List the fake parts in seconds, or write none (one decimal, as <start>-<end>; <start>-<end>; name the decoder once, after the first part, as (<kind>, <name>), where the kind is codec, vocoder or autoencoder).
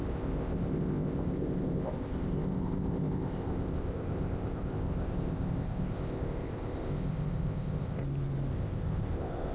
0.0-8.0 (codec, ZipCodec); 8.5-9.5